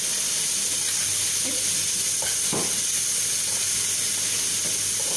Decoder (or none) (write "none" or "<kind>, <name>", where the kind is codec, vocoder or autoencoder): none